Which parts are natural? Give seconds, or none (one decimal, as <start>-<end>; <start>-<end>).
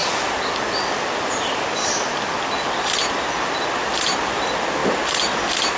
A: 0.0-5.8